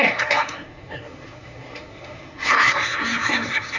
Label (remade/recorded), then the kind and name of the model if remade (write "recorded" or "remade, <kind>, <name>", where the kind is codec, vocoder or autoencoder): remade, codec, SNAC